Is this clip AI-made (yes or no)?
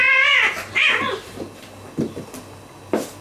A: no